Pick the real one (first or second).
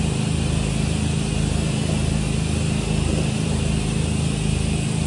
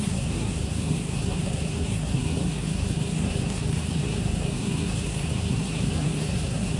first